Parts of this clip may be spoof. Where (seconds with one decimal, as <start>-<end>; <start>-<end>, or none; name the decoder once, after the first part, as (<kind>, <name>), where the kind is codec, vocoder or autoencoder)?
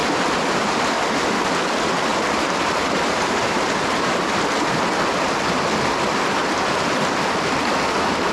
2.1-4.4 (vocoder, BigVGAN v2)